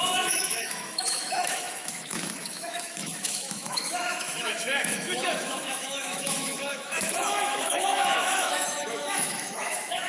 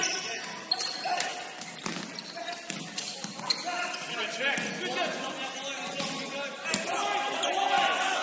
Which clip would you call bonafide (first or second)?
second